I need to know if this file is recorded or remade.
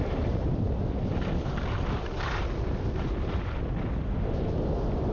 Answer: recorded